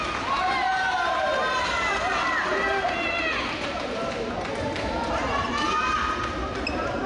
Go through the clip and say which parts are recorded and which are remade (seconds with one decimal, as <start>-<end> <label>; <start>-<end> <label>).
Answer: 0.0-7.1 recorded